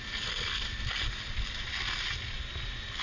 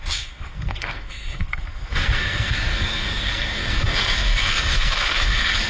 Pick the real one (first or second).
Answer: first